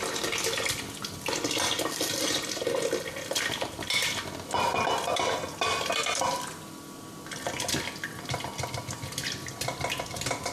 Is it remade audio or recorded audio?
recorded